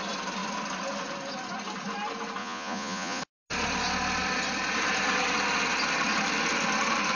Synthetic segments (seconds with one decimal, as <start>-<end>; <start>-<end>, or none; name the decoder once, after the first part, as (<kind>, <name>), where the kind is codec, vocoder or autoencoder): 2.4-3.2 (vocoder, Vocos)